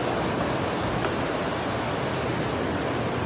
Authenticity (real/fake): real